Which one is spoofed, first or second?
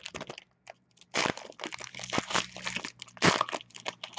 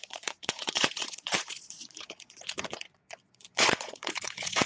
second